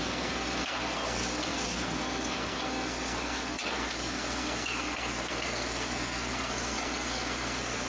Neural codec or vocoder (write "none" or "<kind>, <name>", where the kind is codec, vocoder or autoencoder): codec, SNAC